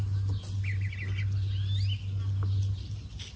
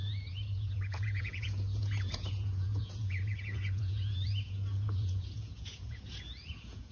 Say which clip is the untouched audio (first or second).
first